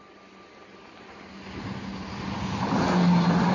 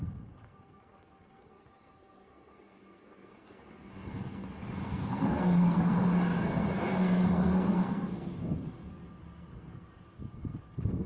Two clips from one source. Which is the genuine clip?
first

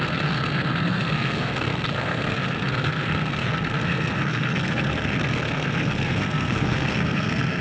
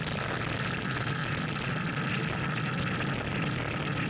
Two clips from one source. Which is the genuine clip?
second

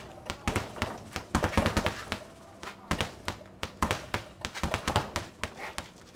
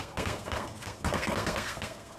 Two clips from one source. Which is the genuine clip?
first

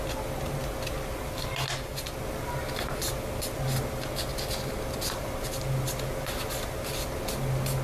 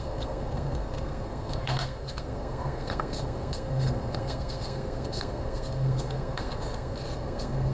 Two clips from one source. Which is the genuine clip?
first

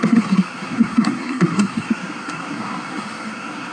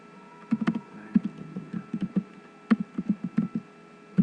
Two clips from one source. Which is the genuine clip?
second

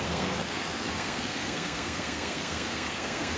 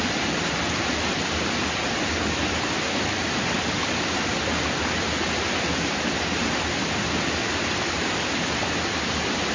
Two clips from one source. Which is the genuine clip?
second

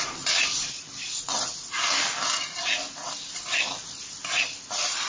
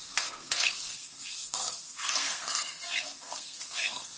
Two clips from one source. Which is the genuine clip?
first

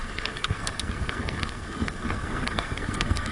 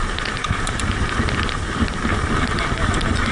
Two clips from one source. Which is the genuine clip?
second